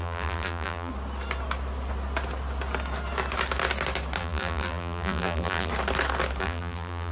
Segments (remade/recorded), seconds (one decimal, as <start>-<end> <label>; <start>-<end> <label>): 0.0-0.9 remade; 0.9-4.2 recorded; 4.2-5.7 remade; 5.7-6.4 recorded; 6.4-7.1 remade